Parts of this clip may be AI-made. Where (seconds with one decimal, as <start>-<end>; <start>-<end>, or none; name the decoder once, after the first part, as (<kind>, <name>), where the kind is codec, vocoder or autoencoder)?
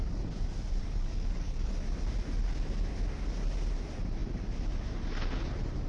0.8-1.7 (codec, DAC)